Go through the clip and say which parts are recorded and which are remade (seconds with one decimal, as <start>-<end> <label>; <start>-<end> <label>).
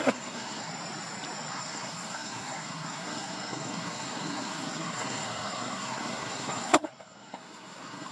0.0-0.7 remade; 0.7-1.5 recorded; 1.5-8.1 remade